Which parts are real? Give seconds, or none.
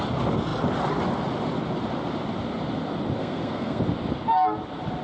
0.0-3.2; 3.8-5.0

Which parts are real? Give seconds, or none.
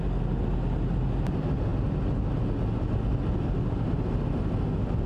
0.0-5.1